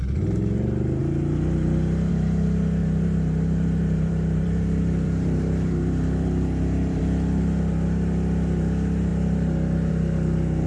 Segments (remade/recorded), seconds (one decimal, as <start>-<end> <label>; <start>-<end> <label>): 0.0-2.8 recorded; 2.8-7.0 remade; 7.0-10.7 recorded